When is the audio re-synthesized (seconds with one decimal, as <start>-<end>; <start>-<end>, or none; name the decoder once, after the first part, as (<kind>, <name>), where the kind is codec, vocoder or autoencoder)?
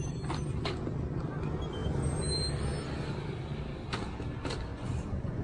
4.7-5.4 (vocoder, Vocos)